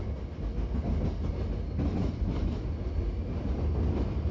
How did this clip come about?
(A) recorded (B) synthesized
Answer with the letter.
A